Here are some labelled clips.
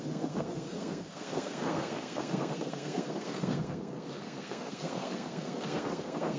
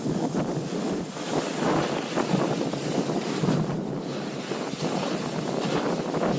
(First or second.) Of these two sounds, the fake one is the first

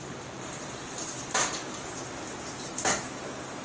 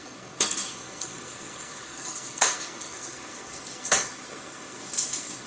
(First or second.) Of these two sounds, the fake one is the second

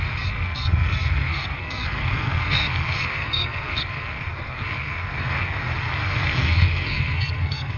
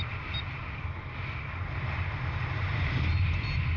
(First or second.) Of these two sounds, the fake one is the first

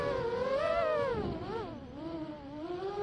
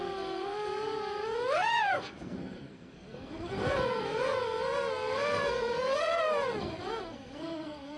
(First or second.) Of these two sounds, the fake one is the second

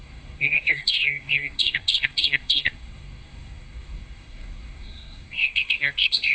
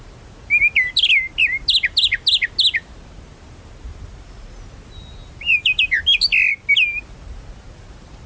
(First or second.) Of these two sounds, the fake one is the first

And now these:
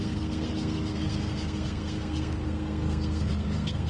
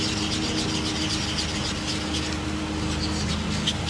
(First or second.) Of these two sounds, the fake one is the first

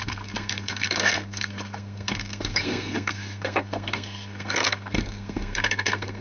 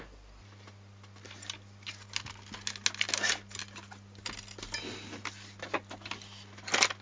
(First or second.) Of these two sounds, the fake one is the first